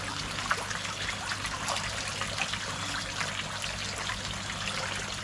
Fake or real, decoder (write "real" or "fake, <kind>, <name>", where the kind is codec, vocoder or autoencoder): real